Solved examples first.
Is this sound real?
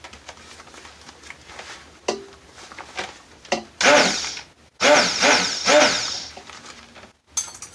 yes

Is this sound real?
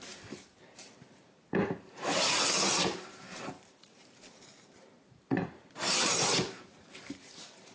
no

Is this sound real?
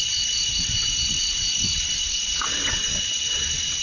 no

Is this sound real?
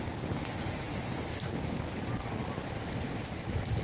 yes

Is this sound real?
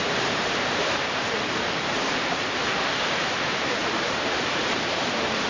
no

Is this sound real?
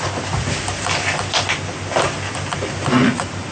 no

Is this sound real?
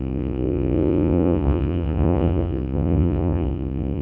no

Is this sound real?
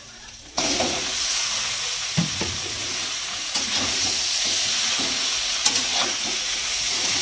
no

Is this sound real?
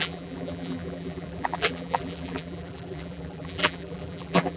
no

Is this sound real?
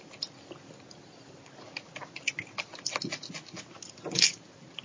yes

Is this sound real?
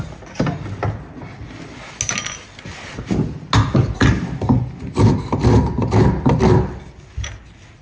yes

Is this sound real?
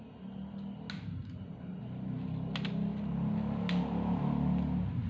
yes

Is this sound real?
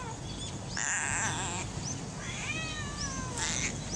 yes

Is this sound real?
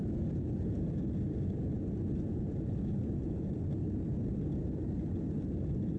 yes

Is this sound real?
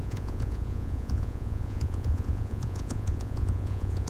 no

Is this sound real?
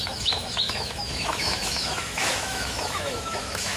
no